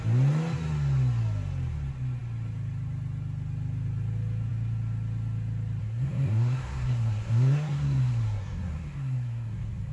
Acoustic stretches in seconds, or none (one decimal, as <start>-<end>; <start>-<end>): 0.0-5.8